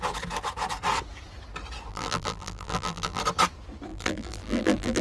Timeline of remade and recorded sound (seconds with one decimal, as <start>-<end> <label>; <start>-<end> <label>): 0.0-1.9 recorded; 1.9-3.2 remade; 3.2-3.9 recorded; 3.9-5.0 remade